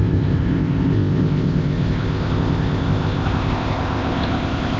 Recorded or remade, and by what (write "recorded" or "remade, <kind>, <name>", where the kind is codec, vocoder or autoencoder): remade, codec, ZipCodec